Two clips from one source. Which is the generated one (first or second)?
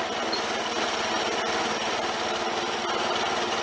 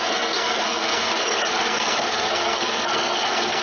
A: second